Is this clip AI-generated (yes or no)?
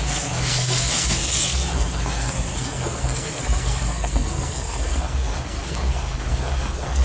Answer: yes